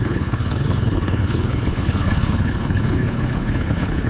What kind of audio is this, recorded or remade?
remade